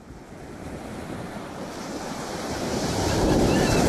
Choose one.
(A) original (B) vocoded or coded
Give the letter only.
B